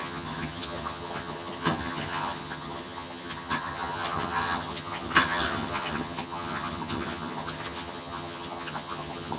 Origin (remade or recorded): remade